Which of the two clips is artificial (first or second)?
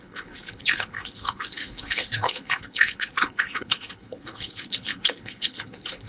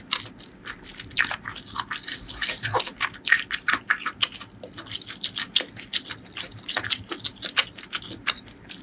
first